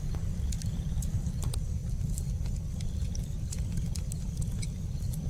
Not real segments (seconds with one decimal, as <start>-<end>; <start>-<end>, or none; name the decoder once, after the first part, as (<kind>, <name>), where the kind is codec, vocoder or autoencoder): 0.0-1.8 (vocoder, BigVGAN v2)